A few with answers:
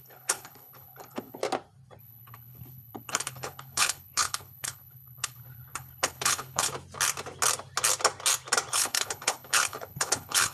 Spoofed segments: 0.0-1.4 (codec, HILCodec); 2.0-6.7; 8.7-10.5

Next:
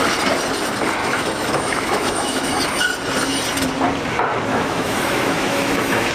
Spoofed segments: 1.0-2.6 (autoencoder, DAC-VAE); 4.5-6.1

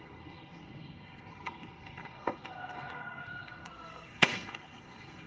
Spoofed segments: 0.0-5.3 (codec, SNAC)